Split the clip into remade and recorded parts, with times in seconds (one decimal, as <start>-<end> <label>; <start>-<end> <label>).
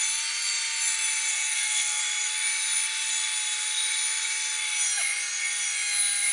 0.0-1.3 recorded; 1.3-2.0 remade; 2.0-6.3 recorded